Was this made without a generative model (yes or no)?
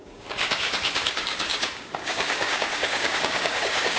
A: no